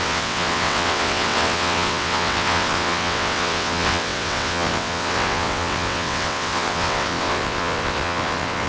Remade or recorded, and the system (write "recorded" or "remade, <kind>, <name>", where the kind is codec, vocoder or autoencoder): remade, vocoder, WaveNeXt